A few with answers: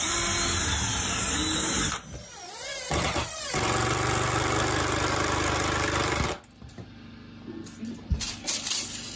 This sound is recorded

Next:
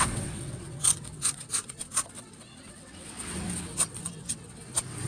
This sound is remade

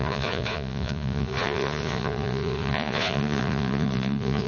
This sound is remade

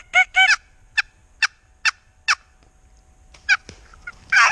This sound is recorded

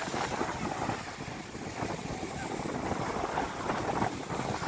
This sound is recorded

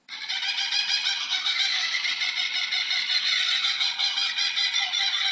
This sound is remade